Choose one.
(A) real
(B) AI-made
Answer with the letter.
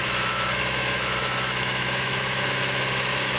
B